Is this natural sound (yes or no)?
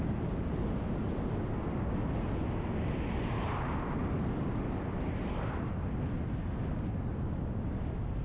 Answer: yes